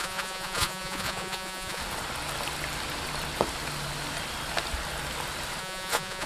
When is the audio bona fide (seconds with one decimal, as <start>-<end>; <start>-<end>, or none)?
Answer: 1.8-5.6